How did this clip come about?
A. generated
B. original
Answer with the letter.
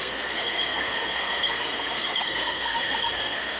A